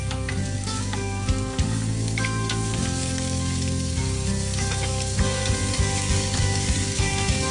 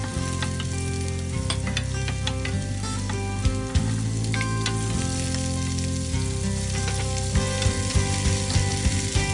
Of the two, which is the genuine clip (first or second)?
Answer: second